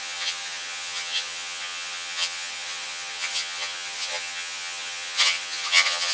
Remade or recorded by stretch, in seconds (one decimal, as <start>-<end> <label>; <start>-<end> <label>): 0.0-6.1 remade